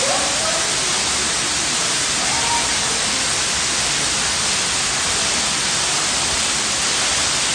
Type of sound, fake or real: real